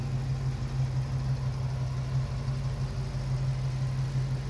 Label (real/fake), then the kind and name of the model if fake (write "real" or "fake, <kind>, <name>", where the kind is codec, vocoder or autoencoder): real